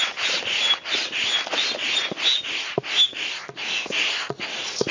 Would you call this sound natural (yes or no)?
yes